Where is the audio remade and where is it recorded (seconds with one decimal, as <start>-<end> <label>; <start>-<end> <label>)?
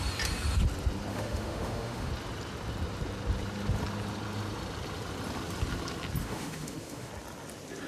0.0-1.1 recorded; 1.1-2.1 remade; 2.1-6.2 recorded; 6.2-7.1 remade; 7.1-7.9 recorded